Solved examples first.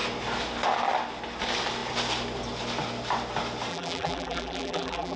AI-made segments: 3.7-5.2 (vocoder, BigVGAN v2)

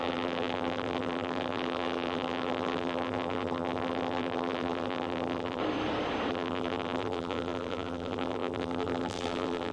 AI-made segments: 0.0-5.6 (vocoder, BigVGAN v2); 6.3-9.7

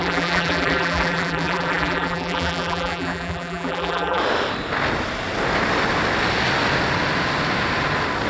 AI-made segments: 0.0-4.2 (vocoder, BigVGAN v2)

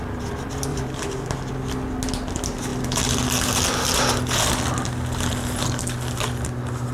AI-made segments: 0.7-1.5 (vocoder, BigVGAN v2)

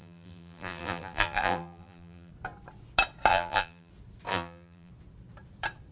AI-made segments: 0.0-2.3 (vocoder, BigVGAN v2); 3.3-3.9; 4.3-4.9

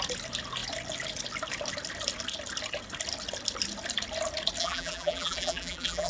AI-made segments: 4.6-6.1 (vocoder, BigVGAN v2)

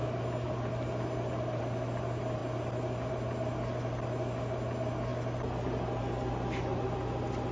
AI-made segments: none